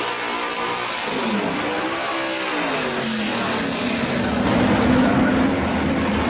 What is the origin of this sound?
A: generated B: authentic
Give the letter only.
B